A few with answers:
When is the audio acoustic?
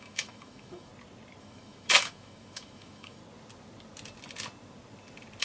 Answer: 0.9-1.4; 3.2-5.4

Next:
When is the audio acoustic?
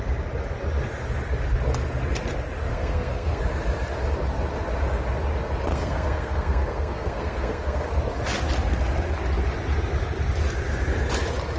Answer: 0.0-2.7; 3.4-5.7; 7.9-11.6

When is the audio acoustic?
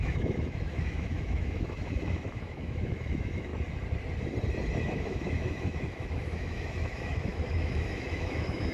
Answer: 3.5-4.8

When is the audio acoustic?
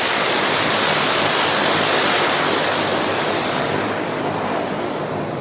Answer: 0.0-5.4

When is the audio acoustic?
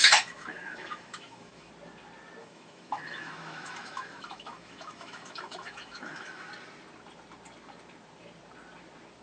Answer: 1.7-2.4; 6.5-9.2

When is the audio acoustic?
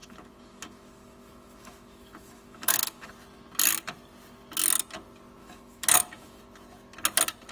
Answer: 3.1-5.4; 6.4-7.5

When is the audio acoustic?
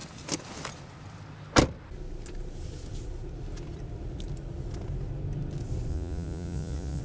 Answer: 0.0-5.9